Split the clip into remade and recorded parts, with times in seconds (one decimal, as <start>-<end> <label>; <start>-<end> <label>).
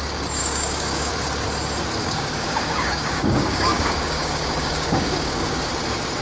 0.0-0.4 recorded; 0.4-1.1 remade; 1.1-2.0 recorded; 2.0-5.7 remade; 5.7-6.2 recorded